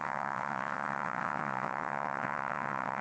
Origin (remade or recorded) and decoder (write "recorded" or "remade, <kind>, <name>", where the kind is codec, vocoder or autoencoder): remade, vocoder, WaveNeXt